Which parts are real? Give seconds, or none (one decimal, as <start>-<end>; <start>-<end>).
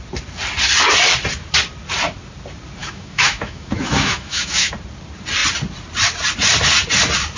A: 0.0-2.8; 4.7-7.4